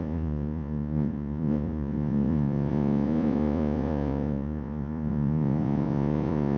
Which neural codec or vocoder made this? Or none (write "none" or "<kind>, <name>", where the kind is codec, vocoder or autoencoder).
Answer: vocoder, Vocos